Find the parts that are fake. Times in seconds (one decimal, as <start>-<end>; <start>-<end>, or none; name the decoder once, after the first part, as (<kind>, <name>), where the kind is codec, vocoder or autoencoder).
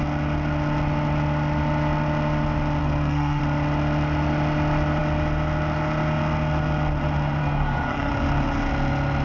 2.8-3.4 (codec, SNAC); 7.4-8.1